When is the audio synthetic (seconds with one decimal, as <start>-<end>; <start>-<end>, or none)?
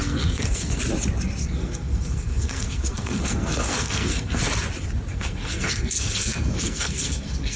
0.0-0.8; 1.4-4.4; 5.1-7.6